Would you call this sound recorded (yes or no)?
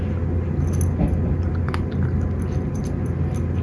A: yes